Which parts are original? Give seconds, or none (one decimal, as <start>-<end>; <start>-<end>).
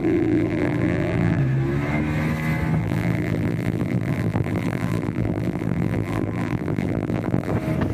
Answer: 1.4-2.8; 7.5-7.9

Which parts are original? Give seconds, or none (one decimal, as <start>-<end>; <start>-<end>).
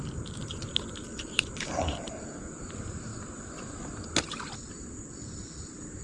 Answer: 0.0-1.1; 2.1-6.0